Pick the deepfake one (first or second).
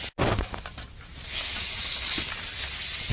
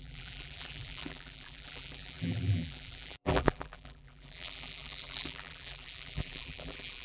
second